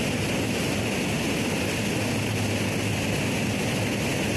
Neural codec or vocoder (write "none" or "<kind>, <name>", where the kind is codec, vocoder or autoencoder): none